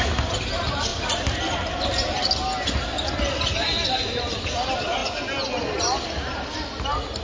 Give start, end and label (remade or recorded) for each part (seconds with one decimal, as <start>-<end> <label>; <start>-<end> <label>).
0.0-7.2 recorded

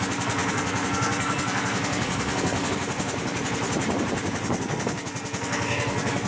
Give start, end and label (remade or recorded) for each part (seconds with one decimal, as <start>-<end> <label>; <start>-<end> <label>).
0.0-3.1 remade; 3.1-4.6 recorded; 4.6-6.3 remade

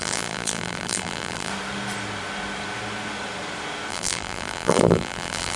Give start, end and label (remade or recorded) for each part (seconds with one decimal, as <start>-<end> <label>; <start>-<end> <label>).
0.0-1.5 remade; 1.5-3.9 recorded; 3.9-5.6 remade

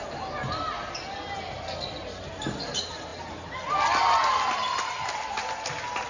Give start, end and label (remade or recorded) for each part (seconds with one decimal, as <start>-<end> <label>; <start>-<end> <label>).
0.0-6.1 recorded

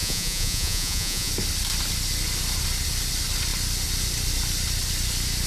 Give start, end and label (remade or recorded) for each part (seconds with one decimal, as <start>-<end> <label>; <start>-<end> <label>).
0.0-1.3 remade; 1.3-5.5 recorded